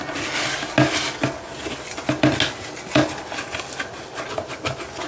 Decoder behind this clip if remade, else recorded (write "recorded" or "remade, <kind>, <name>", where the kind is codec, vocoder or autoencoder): recorded